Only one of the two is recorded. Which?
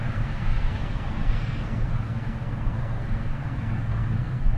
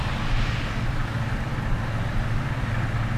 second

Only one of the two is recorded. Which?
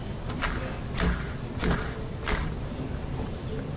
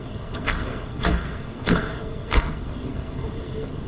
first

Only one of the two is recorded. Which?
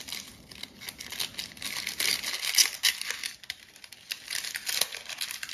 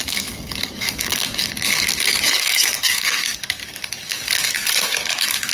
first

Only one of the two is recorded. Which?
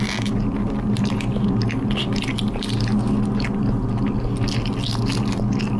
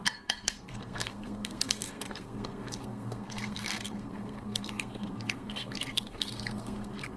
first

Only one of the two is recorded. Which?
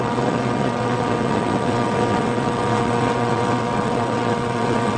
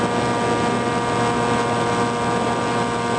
second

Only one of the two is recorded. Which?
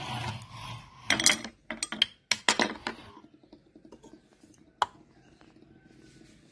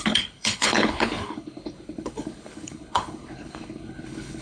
first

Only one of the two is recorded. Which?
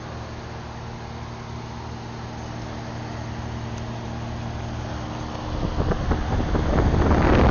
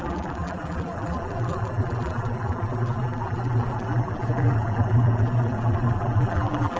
first